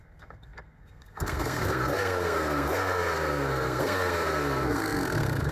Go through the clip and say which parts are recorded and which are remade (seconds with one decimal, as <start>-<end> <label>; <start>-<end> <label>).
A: 0.0-5.5 remade